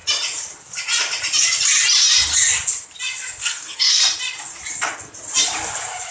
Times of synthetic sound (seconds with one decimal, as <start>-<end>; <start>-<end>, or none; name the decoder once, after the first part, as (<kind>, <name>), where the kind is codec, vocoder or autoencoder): 3.4-4.0 (codec, SNAC)